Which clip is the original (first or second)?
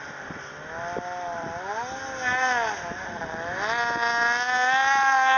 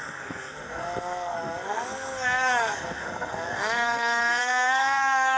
first